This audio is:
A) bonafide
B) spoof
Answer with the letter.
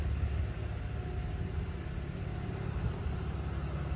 A